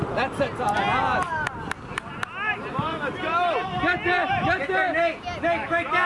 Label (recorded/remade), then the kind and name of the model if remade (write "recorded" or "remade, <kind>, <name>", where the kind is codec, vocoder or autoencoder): recorded